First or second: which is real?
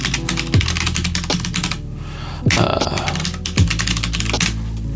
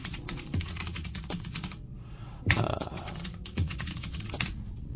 first